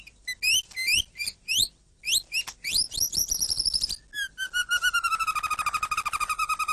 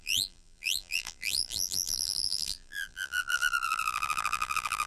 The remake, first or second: second